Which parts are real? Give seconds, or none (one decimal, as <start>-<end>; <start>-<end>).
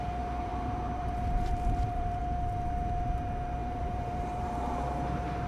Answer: 0.0-0.5; 2.2-3.6; 4.7-5.5